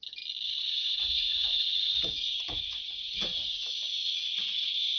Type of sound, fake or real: real